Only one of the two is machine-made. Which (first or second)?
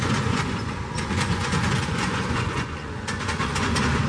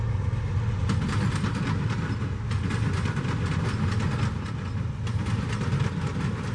first